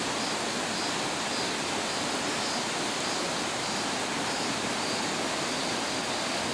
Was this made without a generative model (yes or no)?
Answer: yes